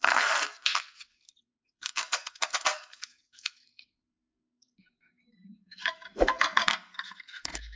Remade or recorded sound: remade